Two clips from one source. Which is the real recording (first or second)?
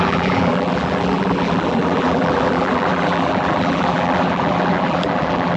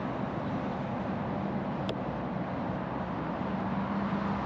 second